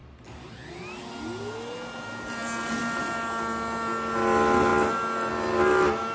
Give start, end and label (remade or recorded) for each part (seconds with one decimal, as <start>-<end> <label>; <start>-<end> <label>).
0.0-6.1 recorded